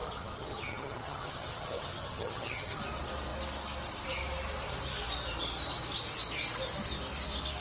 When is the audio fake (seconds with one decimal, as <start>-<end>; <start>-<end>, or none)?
0.0-2.8